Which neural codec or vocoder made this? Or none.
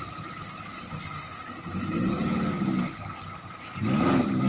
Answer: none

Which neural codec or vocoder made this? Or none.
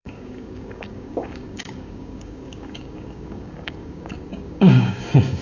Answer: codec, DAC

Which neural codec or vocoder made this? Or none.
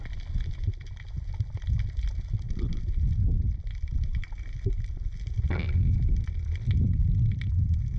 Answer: none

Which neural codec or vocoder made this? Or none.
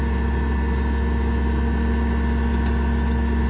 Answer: none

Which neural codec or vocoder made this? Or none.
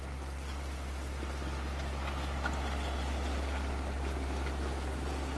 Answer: none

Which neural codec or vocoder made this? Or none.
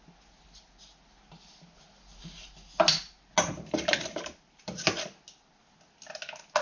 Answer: none